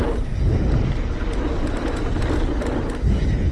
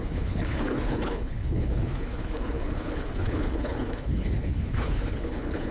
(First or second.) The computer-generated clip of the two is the second